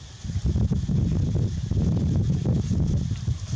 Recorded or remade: recorded